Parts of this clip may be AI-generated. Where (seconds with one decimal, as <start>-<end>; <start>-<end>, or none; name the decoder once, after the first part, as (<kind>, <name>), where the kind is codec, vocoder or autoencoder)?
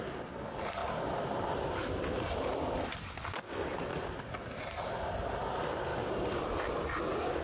none